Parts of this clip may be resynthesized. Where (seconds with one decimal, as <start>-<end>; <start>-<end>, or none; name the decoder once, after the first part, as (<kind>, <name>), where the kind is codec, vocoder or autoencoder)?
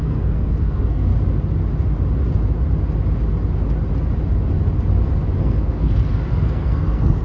0.0-1.1 (codec, SNAC); 5.4-7.2